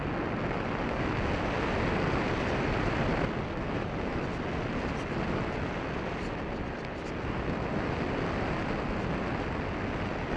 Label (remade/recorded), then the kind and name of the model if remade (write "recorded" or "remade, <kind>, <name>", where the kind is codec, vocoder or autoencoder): recorded